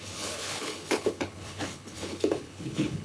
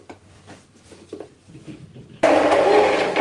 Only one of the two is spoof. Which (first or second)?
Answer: first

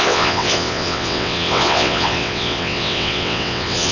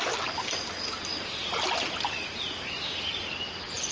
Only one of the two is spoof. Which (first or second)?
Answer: first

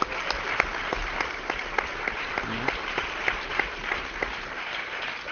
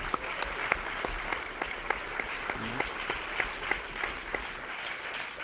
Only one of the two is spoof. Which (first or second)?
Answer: first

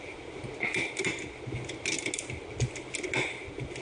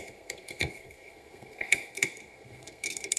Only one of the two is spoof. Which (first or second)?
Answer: second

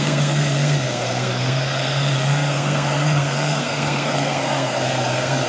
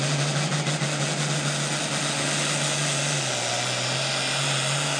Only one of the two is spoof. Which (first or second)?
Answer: first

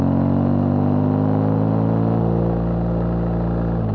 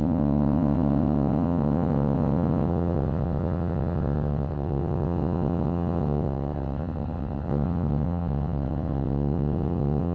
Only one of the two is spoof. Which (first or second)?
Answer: second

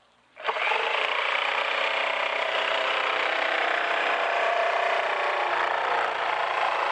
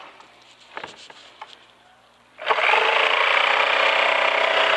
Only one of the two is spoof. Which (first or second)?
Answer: first